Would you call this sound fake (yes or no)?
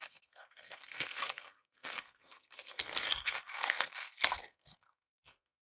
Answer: yes